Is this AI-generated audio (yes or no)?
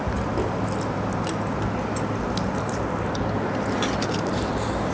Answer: no